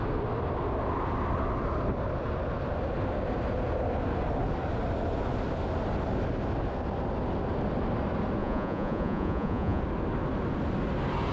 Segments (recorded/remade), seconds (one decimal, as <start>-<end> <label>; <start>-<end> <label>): 0.0-8.4 recorded; 8.4-9.8 remade; 9.8-11.3 recorded